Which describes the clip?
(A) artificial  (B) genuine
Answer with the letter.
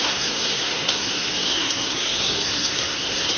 A